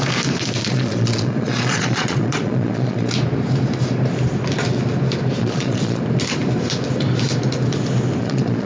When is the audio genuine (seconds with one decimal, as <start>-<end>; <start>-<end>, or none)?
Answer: 0.0-0.6; 3.1-5.4; 6.0-8.2

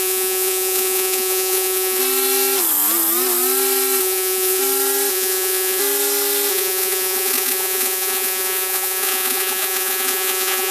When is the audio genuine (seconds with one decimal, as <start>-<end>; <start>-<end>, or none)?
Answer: 2.0-4.0; 4.6-5.1; 5.8-6.5

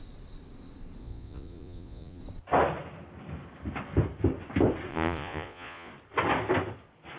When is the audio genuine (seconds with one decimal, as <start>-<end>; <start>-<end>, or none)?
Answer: 0.0-1.0; 2.2-4.9; 5.9-7.2

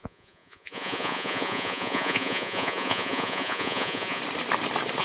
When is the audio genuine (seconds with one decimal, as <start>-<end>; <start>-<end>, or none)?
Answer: 4.2-5.0

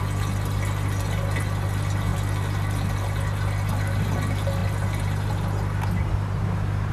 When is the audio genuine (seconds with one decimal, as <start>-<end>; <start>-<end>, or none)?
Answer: 0.0-6.9

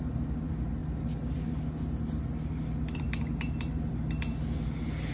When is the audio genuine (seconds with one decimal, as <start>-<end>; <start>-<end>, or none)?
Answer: 0.0-5.1